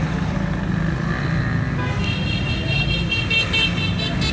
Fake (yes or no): no